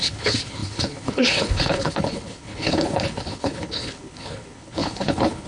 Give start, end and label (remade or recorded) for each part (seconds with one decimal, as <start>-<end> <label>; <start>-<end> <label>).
0.0-5.5 remade